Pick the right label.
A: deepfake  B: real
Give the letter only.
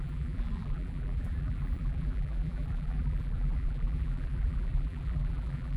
A